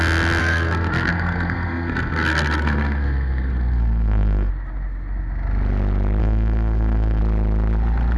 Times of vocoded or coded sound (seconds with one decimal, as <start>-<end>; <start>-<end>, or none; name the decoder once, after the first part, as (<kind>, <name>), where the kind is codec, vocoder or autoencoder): 0.4-4.5 (codec, SNAC); 6.2-7.2